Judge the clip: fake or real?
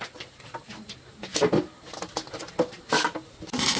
real